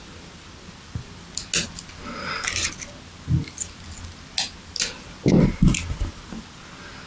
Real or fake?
real